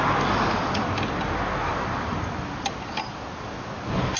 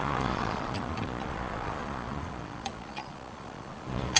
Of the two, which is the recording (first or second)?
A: first